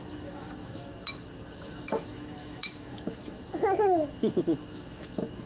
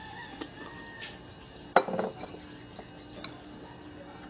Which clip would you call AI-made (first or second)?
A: first